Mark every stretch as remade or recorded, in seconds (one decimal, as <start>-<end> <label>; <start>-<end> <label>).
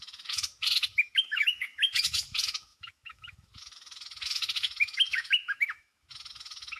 0.0-6.8 remade